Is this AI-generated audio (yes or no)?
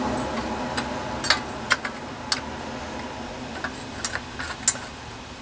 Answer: no